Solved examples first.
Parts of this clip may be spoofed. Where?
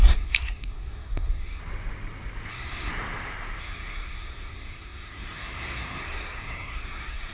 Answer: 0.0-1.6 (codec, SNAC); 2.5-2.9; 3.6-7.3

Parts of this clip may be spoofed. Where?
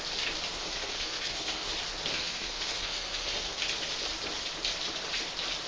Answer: 0.5-1.7 (codec, SNAC); 2.1-3.6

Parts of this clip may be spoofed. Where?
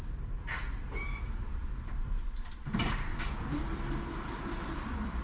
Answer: 0.0-3.1 (vocoder, BigVGAN v2); 4.6-5.2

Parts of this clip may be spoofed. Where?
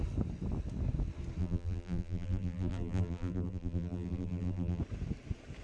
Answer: 1.4-4.8 (vocoder, BigVGAN v2)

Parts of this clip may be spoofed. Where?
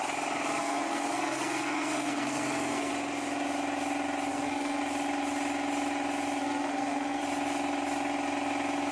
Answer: 0.6-2.9 (codec, SNAC); 4.3-4.8; 6.4-7.2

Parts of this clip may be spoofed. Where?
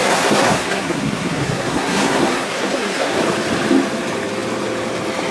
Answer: 0.0-3.2 (codec, SNAC)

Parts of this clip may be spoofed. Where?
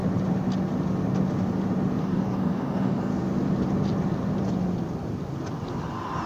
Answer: 2.0-3.1 (codec, DAC)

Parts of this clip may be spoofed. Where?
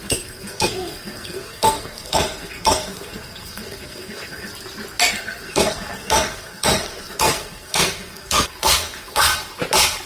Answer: 0.0-4.5 (codec, SNAC); 5.1-9.3